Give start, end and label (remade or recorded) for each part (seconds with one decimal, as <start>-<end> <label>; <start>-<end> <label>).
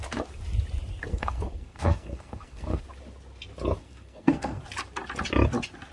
0.0-1.1 recorded; 1.1-2.8 remade; 2.8-3.8 recorded; 3.8-4.6 remade; 4.6-5.9 recorded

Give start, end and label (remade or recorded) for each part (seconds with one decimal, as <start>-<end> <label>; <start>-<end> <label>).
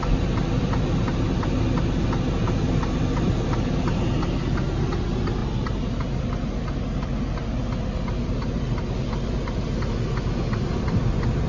0.0-11.5 recorded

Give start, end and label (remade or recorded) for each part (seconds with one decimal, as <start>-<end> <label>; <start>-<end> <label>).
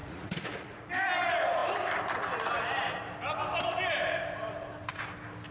0.0-0.9 remade; 0.9-5.5 recorded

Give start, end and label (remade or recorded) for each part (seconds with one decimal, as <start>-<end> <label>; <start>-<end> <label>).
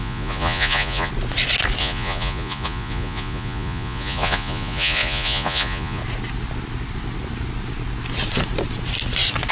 0.0-1.1 remade; 1.1-1.8 recorded; 1.8-6.0 remade; 6.0-9.5 recorded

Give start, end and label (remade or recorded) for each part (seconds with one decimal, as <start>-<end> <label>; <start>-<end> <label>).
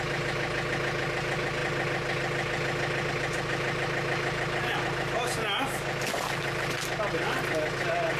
0.0-8.2 recorded